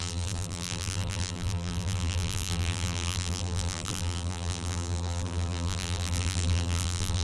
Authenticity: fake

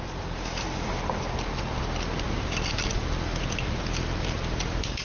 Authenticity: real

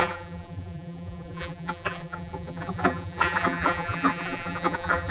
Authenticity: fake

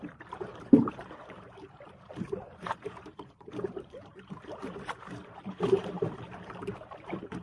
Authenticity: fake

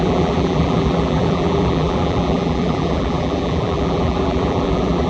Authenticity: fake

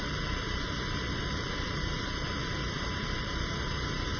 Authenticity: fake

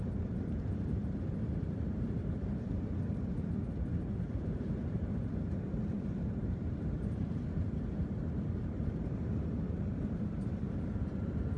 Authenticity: fake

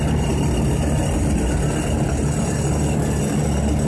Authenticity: real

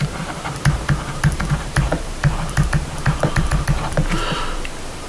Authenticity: fake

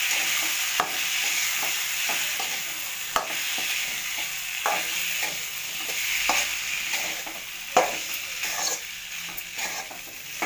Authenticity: real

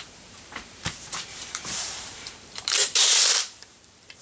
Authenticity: fake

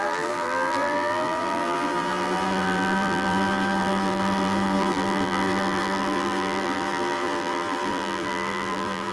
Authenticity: fake